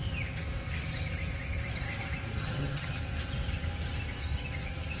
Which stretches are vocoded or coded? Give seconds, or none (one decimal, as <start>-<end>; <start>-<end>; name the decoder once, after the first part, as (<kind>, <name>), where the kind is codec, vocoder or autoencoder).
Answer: 2.4-3.0 (vocoder, HiFi-GAN)